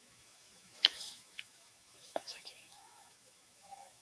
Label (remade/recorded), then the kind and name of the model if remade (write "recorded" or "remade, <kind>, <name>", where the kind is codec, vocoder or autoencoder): remade, autoencoder, DAC-VAE